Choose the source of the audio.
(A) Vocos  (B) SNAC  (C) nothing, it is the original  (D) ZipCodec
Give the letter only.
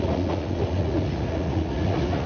A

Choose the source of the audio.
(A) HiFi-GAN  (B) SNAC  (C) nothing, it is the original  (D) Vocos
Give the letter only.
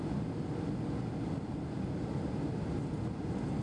C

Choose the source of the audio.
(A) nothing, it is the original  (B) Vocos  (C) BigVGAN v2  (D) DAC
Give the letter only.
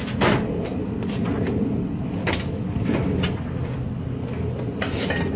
A